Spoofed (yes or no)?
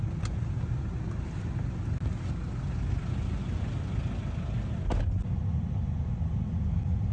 no